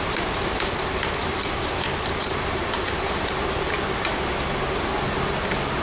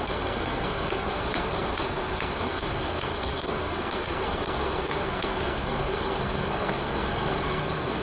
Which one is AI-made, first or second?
second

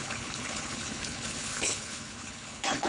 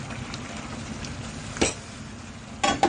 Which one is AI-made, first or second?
first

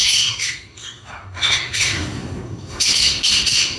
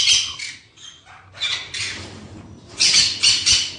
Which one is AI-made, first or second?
first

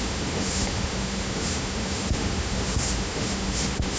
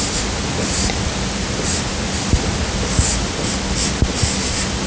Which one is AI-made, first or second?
first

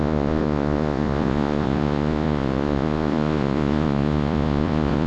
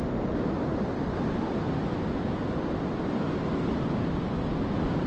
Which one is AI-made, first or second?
first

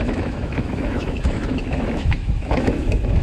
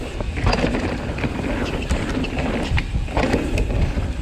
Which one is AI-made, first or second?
first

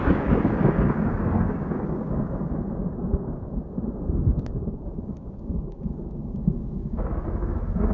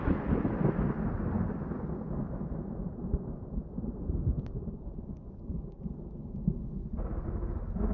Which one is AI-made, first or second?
first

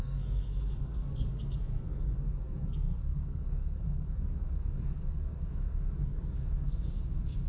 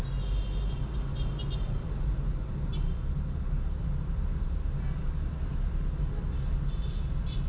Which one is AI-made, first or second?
first